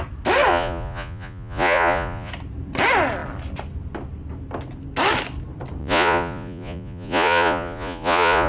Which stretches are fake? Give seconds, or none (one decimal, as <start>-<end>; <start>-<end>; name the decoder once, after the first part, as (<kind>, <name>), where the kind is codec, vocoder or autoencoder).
0.5-2.3 (vocoder, Vocos); 5.8-8.5